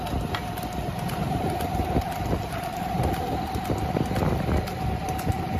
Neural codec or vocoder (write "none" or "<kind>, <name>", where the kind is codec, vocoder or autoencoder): none